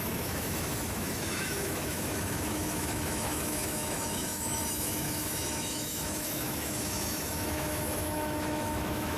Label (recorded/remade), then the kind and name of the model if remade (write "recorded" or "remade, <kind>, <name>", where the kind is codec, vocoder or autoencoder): remade, autoencoder, DAC-VAE